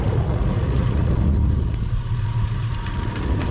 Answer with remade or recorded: remade